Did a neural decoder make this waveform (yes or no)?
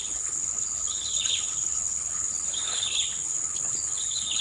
yes